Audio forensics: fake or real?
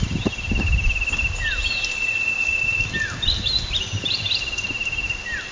real